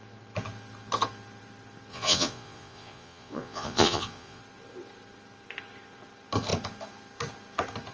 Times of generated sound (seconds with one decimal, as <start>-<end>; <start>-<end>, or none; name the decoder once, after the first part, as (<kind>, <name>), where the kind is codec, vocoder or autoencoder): 1.9-4.4 (vocoder, Vocos)